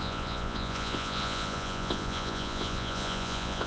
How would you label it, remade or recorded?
remade